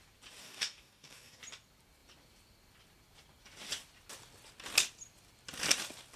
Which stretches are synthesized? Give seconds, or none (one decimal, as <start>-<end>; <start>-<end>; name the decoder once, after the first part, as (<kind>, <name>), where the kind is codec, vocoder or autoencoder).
0.4-1.4 (codec, DAC)